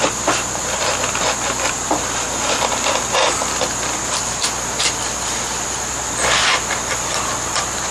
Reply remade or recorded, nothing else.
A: recorded